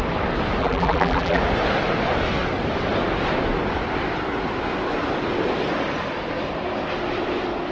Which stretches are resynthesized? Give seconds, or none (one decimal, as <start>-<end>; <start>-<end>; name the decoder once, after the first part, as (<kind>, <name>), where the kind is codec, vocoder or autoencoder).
0.6-1.4 (vocoder, BigVGAN v2)